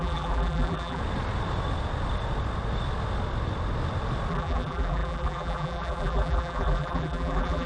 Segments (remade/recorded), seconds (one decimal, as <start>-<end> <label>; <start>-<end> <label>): 0.0-1.0 remade; 1.0-4.3 recorded; 4.3-7.7 remade